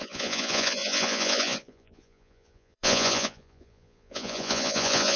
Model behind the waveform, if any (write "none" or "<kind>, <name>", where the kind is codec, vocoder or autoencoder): vocoder, Vocos